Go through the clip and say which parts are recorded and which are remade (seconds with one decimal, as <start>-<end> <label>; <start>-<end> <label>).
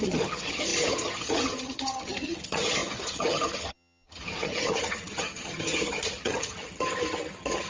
0.0-7.7 remade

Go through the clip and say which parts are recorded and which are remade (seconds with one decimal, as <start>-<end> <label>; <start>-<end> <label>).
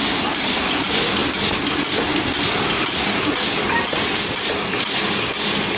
0.0-1.2 remade; 1.2-4.7 recorded; 4.7-5.8 remade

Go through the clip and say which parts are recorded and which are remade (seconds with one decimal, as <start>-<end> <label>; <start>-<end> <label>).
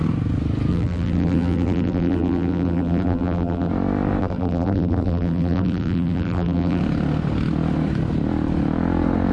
0.0-0.7 recorded; 0.7-3.7 remade; 3.7-4.2 recorded; 4.2-6.8 remade; 6.8-9.3 recorded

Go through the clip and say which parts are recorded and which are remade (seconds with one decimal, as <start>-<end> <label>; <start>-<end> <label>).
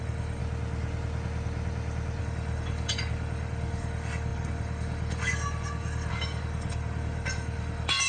0.0-0.4 remade; 0.4-2.2 recorded; 2.2-8.1 remade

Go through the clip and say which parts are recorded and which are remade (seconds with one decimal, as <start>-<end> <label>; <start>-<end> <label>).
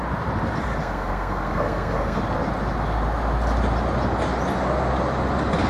0.0-0.8 recorded; 0.8-2.2 remade; 2.2-5.7 recorded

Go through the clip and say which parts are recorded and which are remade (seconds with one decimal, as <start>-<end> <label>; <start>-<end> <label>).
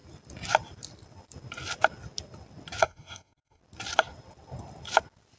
0.0-2.8 recorded; 2.8-3.6 remade; 3.6-5.4 recorded